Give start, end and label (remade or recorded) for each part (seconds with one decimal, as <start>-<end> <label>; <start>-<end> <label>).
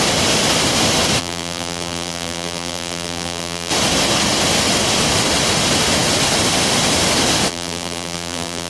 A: 0.0-1.2 recorded; 1.2-3.7 remade; 3.7-7.5 recorded; 7.5-8.7 remade